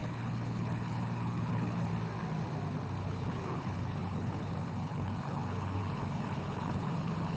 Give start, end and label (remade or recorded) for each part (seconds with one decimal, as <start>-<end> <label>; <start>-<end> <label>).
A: 0.0-1.9 remade; 1.9-3.0 recorded; 3.0-7.4 remade